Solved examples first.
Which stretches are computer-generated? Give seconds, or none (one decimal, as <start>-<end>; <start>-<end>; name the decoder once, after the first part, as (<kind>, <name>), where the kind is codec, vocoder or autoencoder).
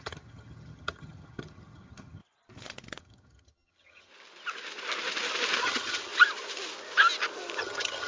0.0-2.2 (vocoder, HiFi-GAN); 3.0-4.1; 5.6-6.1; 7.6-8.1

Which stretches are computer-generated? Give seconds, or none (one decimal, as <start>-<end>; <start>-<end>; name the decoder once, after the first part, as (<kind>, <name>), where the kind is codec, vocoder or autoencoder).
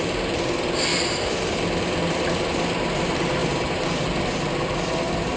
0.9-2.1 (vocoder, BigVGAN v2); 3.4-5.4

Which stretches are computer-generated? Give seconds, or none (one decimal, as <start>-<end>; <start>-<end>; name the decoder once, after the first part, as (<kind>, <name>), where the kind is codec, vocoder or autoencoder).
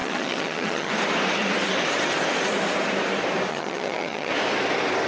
0.0-0.9 (vocoder, HiFi-GAN); 3.5-4.3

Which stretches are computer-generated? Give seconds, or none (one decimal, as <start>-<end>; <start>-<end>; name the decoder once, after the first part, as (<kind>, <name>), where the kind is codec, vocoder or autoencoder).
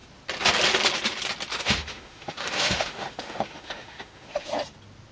1.5-4.5 (autoencoder, DAC-VAE)